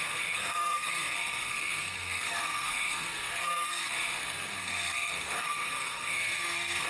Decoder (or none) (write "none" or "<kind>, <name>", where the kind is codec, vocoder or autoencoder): codec, SNAC